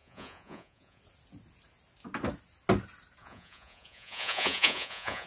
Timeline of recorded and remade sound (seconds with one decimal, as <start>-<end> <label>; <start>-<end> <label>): 0.0-1.0 remade; 1.0-3.2 recorded; 3.2-5.3 remade

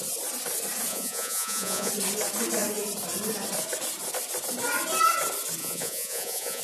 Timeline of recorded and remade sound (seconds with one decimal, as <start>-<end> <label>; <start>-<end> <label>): 0.0-0.9 recorded; 0.9-1.9 remade; 1.9-5.6 recorded; 5.6-6.6 remade

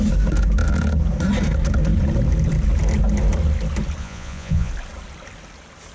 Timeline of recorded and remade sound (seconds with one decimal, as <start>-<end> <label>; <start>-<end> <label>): 0.0-4.0 recorded; 4.0-4.7 remade; 4.7-5.9 recorded